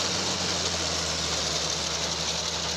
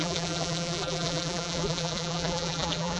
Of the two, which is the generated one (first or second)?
second